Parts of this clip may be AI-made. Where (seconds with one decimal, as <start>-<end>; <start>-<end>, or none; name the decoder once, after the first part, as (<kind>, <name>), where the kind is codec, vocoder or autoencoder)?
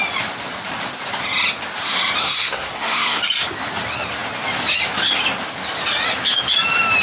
2.2-3.2 (codec, SNAC)